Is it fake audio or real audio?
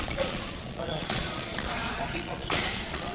fake